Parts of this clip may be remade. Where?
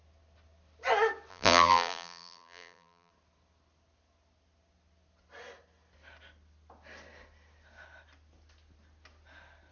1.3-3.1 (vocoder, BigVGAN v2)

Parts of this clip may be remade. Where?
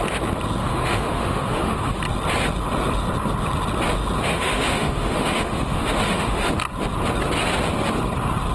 0.6-2.0 (autoencoder, DAC-VAE); 4.3-6.5